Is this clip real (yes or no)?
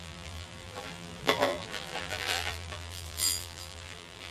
no